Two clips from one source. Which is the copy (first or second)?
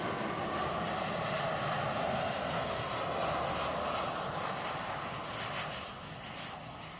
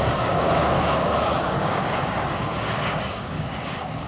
second